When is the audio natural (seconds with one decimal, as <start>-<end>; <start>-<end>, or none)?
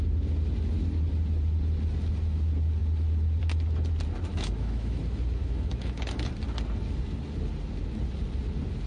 0.0-4.3; 5.0-5.4; 6.3-8.9